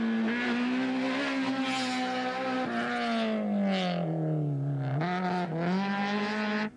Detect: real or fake real